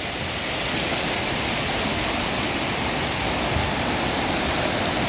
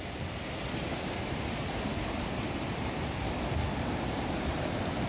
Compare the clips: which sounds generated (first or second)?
second